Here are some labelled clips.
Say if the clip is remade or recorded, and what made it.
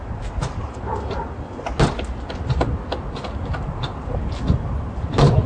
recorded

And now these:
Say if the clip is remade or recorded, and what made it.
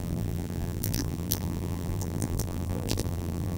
remade, vocoder, BigVGAN v2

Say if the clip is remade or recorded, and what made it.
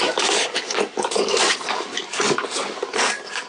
remade, codec, DAC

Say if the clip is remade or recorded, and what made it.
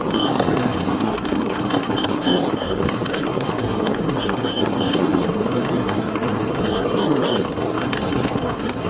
remade, codec, SNAC